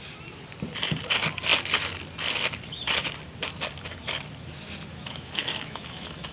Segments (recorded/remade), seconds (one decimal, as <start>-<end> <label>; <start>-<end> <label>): 0.0-4.9 recorded; 4.9-6.3 remade